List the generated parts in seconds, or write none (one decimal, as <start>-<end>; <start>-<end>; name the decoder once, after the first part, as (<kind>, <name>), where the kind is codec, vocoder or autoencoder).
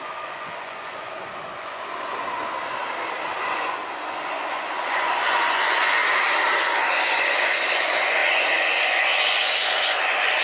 0.0-2.8 (vocoder, Vocos); 3.4-6.0; 6.6-10.4